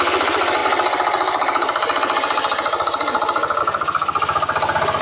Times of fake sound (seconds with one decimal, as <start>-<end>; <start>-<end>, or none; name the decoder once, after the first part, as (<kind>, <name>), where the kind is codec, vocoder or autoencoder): none